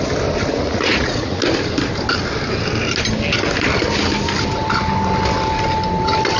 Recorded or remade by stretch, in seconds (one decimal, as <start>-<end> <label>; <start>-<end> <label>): 0.0-0.5 recorded; 0.5-1.4 remade; 1.4-6.4 recorded